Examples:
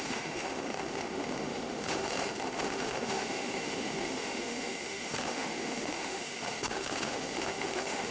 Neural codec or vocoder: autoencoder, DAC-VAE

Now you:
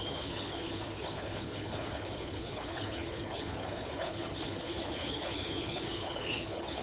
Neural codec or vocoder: codec, HILCodec